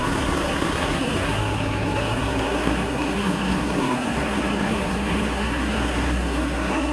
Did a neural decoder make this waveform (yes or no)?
yes